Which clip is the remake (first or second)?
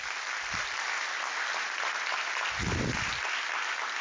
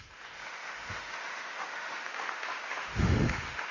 second